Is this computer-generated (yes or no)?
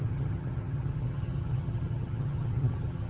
yes